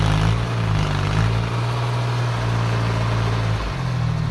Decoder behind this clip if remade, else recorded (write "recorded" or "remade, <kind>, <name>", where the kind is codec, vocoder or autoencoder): recorded